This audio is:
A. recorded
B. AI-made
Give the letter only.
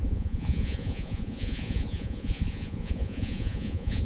B